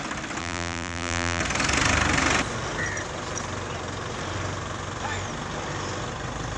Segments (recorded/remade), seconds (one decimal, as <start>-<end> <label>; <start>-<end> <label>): 0.0-0.4 recorded; 0.4-1.4 remade; 1.4-6.6 recorded